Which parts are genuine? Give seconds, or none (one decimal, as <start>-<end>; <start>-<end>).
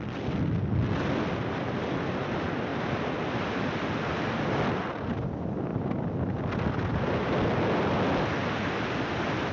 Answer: 0.0-9.5